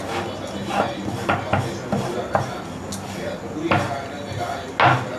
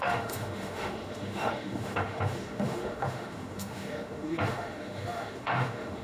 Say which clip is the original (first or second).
first